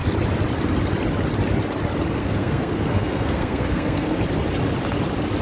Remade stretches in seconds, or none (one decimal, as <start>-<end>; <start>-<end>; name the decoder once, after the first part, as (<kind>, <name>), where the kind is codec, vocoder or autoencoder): 2.2-4.2 (codec, SNAC)